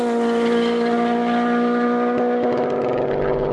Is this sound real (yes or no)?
yes